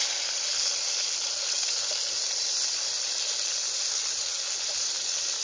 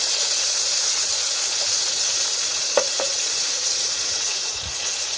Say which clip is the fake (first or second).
second